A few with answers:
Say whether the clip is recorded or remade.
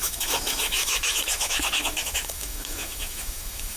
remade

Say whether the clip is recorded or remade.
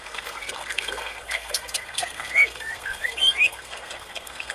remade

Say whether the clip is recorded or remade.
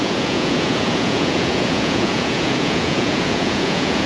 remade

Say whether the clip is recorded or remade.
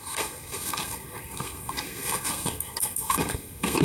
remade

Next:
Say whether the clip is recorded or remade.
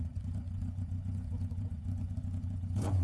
remade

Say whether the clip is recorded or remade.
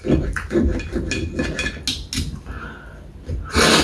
recorded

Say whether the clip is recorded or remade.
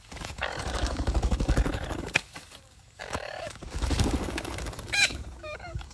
remade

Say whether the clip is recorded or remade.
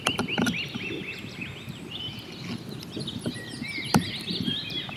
remade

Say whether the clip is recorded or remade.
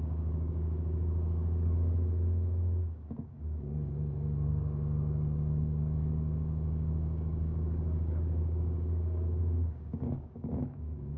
remade